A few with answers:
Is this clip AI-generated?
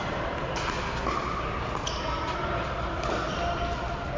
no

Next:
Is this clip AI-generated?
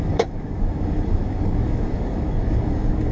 yes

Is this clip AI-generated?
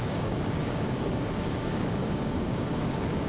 yes